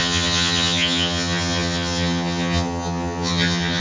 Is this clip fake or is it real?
fake